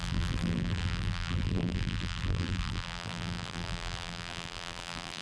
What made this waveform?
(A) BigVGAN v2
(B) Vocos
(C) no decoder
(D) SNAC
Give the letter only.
A